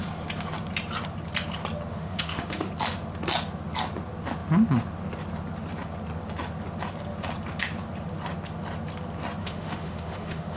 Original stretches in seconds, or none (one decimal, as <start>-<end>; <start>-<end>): 0.0-1.9; 2.7-9.4